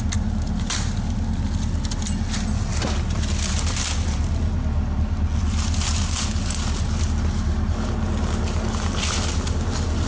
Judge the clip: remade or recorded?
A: recorded